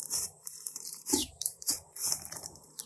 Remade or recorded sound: remade